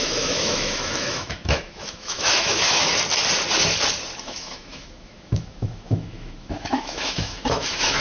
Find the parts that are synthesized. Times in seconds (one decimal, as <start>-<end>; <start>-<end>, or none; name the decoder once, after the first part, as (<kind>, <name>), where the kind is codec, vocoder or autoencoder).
0.0-2.9 (autoencoder, DAC-VAE); 4.2-8.0